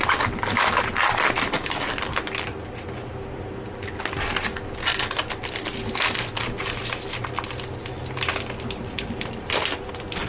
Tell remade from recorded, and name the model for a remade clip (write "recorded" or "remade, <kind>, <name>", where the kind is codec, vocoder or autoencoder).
recorded